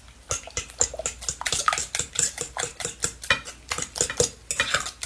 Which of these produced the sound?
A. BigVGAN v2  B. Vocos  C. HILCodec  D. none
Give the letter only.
D